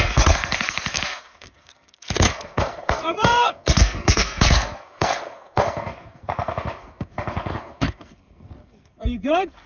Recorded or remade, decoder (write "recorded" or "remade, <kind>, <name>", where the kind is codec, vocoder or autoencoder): remade, codec, SNAC